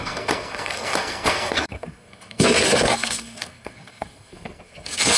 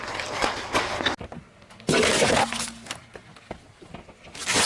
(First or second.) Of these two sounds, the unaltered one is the second